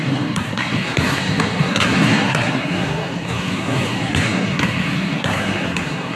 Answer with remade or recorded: remade